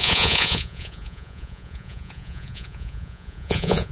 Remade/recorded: remade